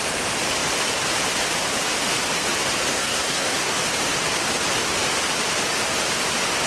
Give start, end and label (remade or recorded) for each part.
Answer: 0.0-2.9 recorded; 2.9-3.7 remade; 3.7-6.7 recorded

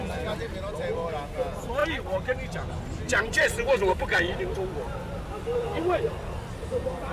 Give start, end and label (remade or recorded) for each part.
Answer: 0.0-7.1 recorded